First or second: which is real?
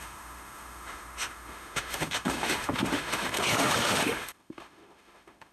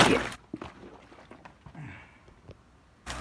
second